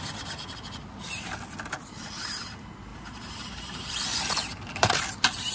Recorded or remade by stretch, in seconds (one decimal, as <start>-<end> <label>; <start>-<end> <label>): 0.0-2.9 recorded; 2.9-5.0 remade; 5.0-5.5 recorded